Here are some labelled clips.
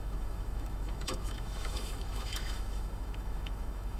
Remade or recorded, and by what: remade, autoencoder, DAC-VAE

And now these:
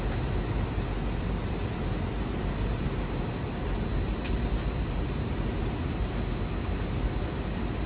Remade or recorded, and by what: recorded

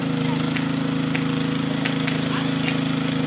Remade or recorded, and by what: recorded